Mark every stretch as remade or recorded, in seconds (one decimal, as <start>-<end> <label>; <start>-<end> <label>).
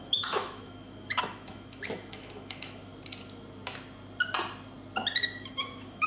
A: 0.0-2.9 remade; 2.9-5.5 recorded; 5.5-6.1 remade